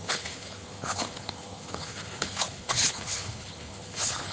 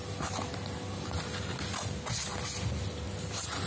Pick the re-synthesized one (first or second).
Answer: first